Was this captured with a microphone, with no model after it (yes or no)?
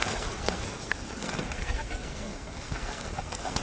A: no